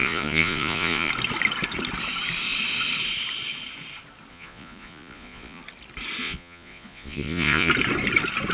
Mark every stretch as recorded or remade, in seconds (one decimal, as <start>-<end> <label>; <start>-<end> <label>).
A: 0.0-1.1 remade; 1.1-4.3 recorded; 4.3-5.6 remade; 5.6-6.2 recorded; 6.2-7.7 remade; 7.7-8.5 recorded